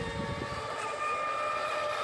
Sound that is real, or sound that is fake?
real